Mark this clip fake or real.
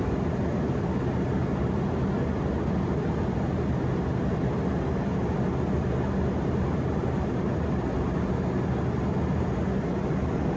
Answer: real